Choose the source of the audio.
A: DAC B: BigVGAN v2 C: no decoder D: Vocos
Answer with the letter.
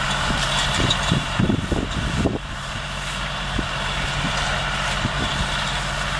B